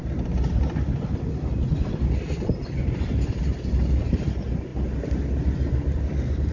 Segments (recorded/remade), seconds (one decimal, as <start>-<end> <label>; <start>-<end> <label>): 0.0-6.5 recorded